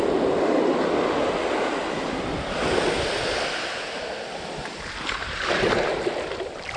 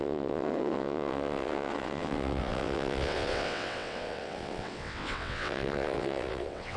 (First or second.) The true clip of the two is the first